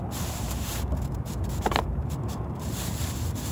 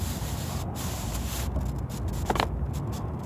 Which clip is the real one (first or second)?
second